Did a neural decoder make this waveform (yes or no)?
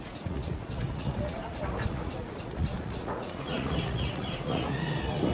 yes